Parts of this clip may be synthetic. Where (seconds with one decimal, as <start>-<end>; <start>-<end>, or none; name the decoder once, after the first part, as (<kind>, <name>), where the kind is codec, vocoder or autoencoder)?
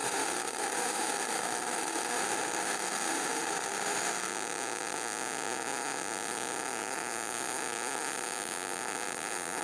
0.0-4.3 (autoencoder, DAC-VAE)